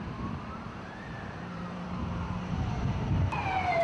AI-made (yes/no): yes